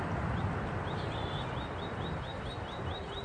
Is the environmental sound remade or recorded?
recorded